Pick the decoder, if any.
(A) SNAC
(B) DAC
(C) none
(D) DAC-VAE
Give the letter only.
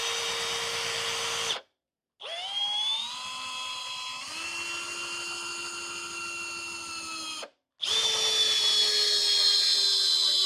C